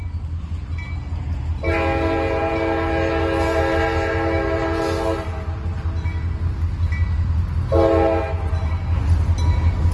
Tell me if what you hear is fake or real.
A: real